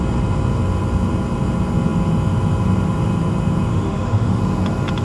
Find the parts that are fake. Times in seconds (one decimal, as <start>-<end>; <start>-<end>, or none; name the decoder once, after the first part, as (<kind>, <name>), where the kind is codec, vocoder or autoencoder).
3.7-4.4 (autoencoder, DAC-VAE)